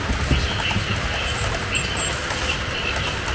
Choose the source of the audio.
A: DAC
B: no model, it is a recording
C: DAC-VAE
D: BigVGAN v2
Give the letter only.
B